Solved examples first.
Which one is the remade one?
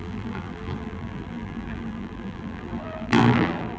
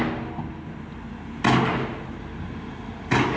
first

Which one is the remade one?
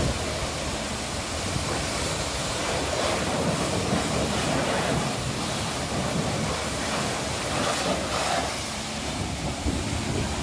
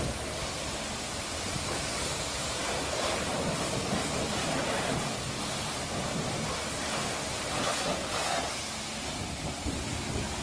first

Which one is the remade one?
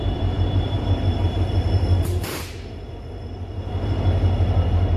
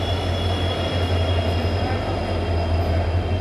first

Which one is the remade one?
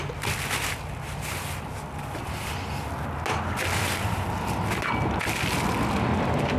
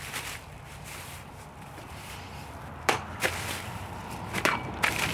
second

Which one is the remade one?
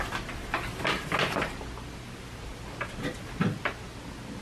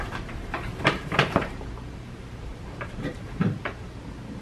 second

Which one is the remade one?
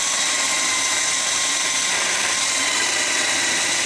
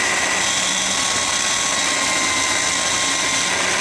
first